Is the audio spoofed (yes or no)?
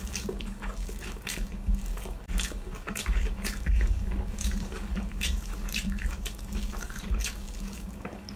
yes